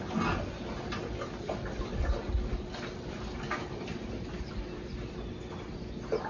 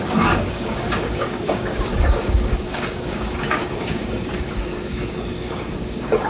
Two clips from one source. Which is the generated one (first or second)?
second